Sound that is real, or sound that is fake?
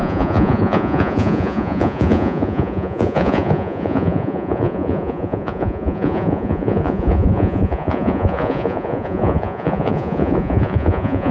fake